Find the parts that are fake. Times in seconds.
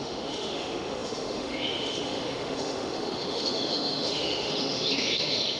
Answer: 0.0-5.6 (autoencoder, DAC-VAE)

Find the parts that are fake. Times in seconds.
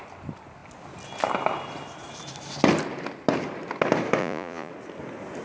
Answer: 4.2-4.7 (vocoder, Vocos)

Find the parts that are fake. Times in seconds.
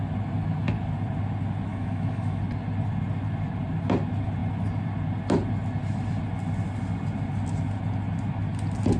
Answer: 1.7-2.4 (autoencoder, DAC-VAE)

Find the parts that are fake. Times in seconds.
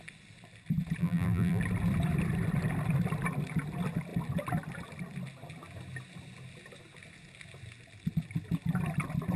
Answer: 1.0-1.6 (vocoder, BigVGAN v2)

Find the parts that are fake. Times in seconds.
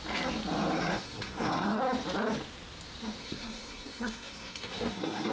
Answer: 0.8-1.8 (codec, SNAC); 3.2-5.3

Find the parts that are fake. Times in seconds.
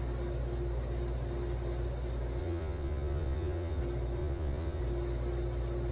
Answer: 2.4-3.8 (vocoder, Vocos); 4.2-4.8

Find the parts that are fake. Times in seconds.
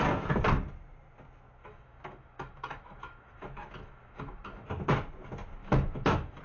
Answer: 1.6-4.7 (autoencoder, DAC-VAE); 5.6-6.4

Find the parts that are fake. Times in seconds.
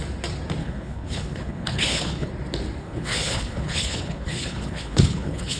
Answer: 0.6-2.3 (codec, HILCodec); 2.8-5.6